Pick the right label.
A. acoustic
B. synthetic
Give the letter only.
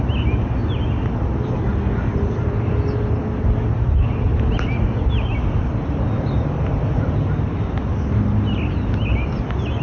A